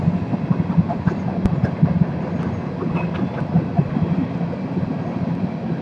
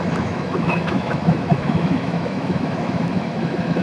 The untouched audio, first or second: first